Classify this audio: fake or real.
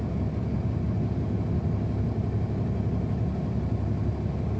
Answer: real